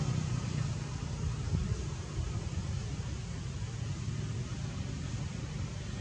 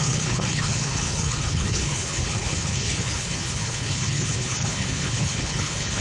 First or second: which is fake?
second